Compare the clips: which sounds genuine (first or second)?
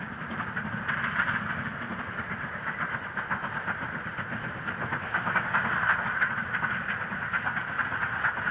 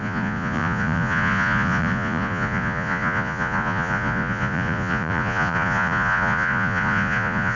first